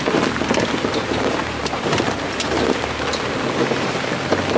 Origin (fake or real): real